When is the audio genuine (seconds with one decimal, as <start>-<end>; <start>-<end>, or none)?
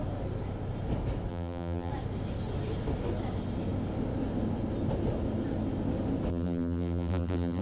0.0-1.3; 1.9-6.3